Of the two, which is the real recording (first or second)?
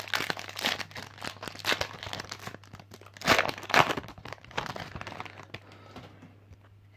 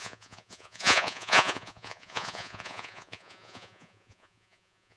first